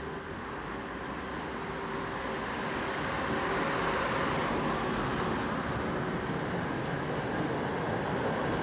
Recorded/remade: recorded